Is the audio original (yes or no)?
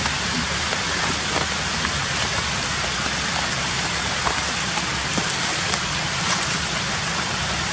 yes